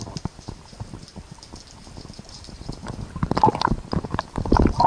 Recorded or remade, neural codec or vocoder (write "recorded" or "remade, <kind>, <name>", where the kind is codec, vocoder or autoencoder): recorded